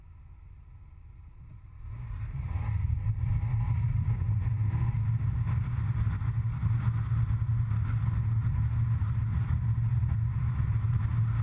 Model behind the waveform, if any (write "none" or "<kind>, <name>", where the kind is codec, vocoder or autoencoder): none